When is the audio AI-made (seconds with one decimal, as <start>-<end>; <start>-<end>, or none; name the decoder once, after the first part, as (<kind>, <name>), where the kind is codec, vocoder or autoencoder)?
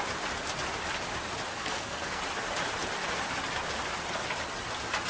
1.5-2.2 (codec, SNAC)